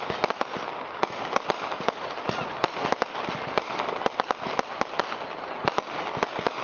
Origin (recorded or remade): recorded